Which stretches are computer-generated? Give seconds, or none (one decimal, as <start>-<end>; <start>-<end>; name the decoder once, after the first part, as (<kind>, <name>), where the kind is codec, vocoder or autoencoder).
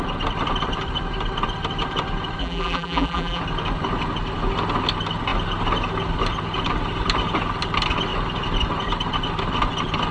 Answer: 2.4-3.4 (vocoder, BigVGAN v2)